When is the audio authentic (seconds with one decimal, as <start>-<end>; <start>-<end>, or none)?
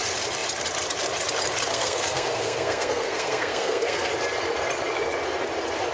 0.0-1.7; 4.1-5.9